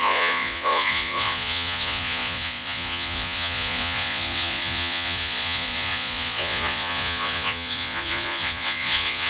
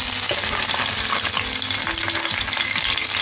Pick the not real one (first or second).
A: first